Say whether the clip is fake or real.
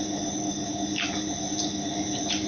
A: real